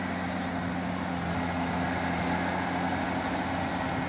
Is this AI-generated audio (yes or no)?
no